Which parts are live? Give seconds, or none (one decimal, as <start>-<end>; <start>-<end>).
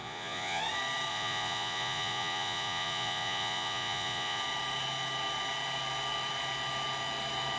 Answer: 0.6-1.1; 4.4-7.6